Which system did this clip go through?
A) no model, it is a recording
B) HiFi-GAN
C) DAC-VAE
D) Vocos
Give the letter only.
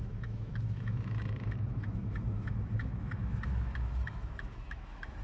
C